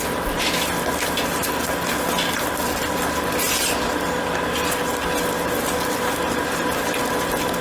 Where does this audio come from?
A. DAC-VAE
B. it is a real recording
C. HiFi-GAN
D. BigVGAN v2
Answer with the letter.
B